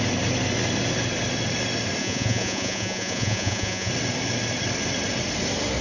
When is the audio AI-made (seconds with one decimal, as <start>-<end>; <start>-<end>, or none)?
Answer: 2.0-3.9